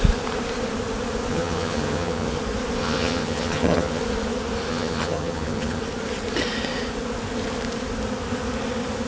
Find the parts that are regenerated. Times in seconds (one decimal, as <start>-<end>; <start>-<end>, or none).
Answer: 1.3-2.4; 2.8-4.0; 4.7-5.8